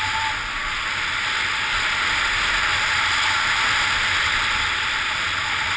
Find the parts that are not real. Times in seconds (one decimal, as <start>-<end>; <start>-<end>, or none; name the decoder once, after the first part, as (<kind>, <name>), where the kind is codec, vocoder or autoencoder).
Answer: none